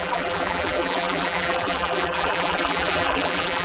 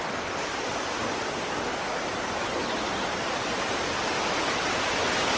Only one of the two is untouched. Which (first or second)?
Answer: second